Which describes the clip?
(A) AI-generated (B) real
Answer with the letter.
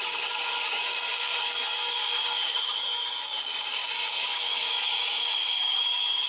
A